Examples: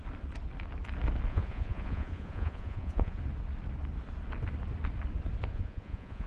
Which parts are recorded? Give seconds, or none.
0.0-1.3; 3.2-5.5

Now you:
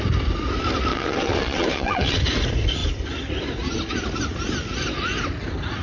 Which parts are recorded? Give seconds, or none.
0.0-0.9; 2.2-5.8

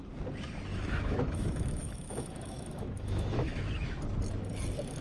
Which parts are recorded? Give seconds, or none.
0.0-0.7; 3.7-5.0

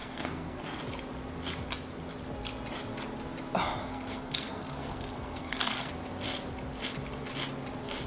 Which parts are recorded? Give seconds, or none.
0.8-3.8; 5.9-8.1

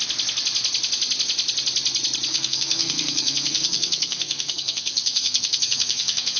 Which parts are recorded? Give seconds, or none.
0.0-2.3

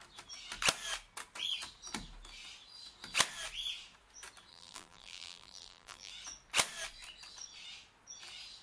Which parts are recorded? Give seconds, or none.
0.0-4.5; 6.1-8.6